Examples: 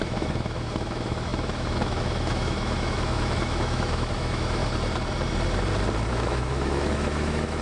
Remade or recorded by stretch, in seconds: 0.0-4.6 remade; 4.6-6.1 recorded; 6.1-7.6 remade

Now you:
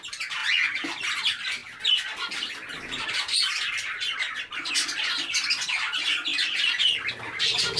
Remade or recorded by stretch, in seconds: 0.0-7.8 recorded

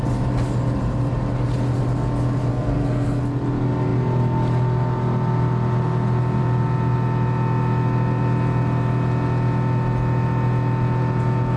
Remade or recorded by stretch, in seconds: 0.0-2.5 recorded; 2.5-3.2 remade; 3.2-11.6 recorded

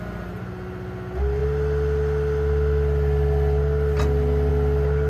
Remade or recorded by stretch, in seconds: 0.0-5.1 recorded

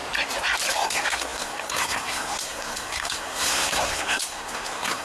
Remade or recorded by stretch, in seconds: 0.0-0.7 recorded; 0.7-5.0 remade

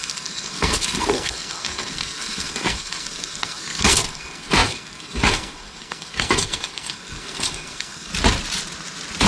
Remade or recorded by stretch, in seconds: 0.0-8.1 remade; 8.1-9.3 recorded

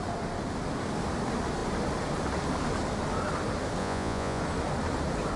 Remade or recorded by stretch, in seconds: 0.0-3.8 recorded; 3.8-4.4 remade; 4.4-5.4 recorded

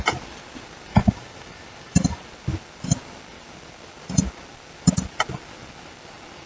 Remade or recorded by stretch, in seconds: 0.0-0.9 recorded; 0.9-2.2 remade; 2.2-6.5 recorded